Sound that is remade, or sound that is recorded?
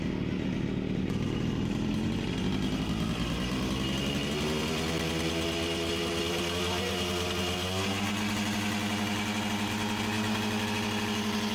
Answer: recorded